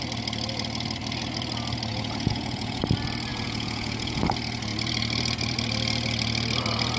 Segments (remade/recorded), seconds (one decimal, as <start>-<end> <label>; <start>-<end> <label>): 0.0-1.9 recorded; 1.9-2.8 remade; 2.8-3.3 recorded; 3.3-4.2 remade; 4.2-7.0 recorded